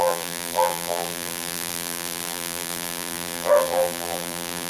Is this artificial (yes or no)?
yes